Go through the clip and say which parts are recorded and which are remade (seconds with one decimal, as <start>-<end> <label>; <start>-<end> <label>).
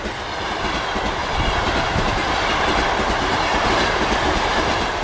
0.0-5.0 recorded